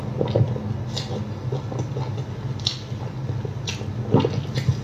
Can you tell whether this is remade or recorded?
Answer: recorded